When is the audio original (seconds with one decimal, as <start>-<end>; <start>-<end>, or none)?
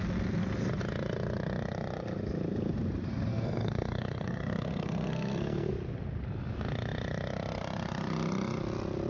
0.0-3.3; 5.7-9.1